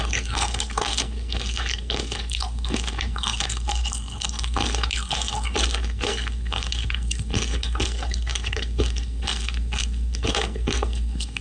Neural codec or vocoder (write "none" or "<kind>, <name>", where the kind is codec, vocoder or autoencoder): codec, SNAC